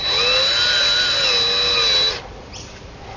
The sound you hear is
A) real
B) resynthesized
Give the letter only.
A